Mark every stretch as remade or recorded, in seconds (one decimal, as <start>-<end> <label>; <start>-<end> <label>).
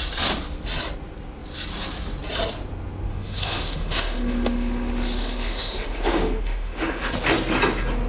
0.0-3.1 recorded; 3.1-7.1 remade; 7.1-8.1 recorded